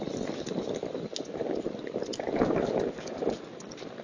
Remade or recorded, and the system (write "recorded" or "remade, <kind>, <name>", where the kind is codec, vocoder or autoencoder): recorded